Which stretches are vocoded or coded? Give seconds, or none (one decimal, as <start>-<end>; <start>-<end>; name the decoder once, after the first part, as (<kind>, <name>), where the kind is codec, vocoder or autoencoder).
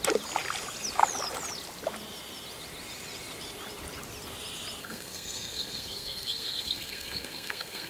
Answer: 4.8-7.9 (codec, SNAC)